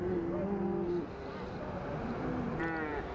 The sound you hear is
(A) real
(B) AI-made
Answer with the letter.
A